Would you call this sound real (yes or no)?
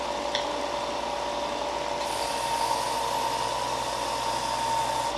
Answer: yes